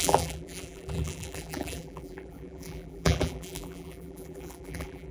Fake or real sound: fake